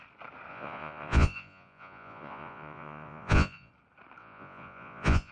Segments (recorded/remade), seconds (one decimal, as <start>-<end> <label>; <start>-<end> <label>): 0.0-0.5 recorded; 0.5-3.7 remade; 3.7-4.2 recorded; 4.2-5.3 remade